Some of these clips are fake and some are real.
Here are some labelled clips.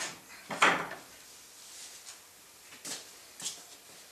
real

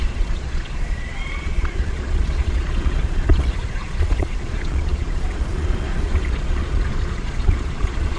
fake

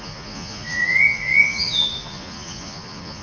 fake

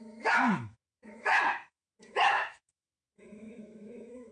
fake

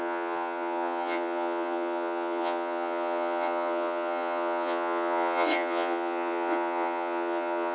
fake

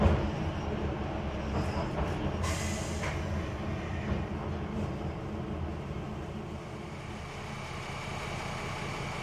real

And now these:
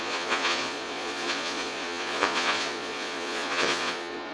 fake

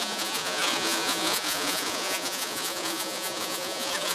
fake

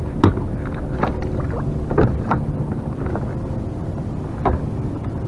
real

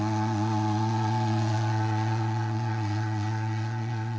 fake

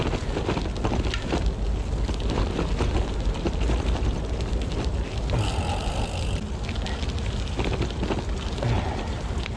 real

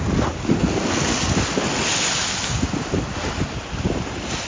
real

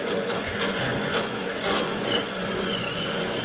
fake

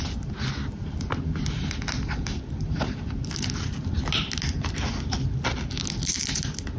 real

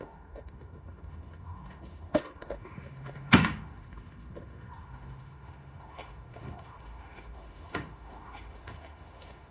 fake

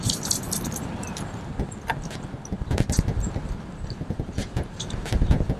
real